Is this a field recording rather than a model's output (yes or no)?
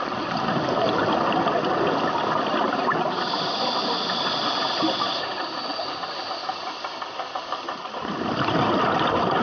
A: yes